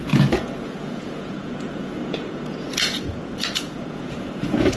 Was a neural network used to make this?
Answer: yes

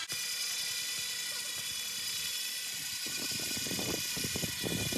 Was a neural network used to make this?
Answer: no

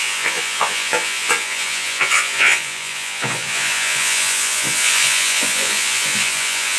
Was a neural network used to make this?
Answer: yes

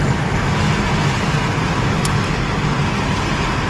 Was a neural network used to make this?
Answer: no